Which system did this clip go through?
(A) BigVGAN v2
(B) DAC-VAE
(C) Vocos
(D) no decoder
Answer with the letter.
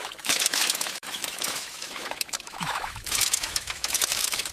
B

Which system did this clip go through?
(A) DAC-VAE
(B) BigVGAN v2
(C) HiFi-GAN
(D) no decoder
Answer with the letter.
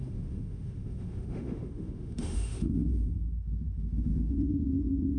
A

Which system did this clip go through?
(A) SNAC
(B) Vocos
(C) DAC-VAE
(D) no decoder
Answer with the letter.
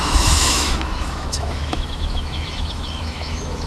C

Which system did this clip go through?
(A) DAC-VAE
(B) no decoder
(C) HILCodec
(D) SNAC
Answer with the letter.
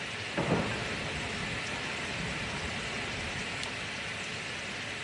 B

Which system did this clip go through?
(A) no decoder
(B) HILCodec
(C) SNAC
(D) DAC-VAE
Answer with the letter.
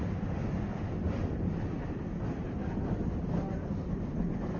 A